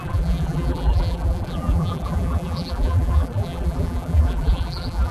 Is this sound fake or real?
fake